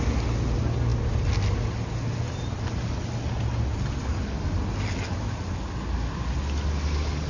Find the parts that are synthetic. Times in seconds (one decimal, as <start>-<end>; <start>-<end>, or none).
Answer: none